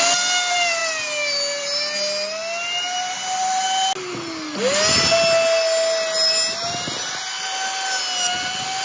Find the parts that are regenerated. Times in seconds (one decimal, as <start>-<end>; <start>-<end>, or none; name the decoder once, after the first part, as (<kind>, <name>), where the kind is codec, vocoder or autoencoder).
none